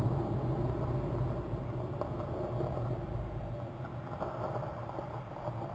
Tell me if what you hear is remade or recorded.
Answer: recorded